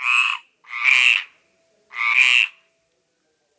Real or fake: real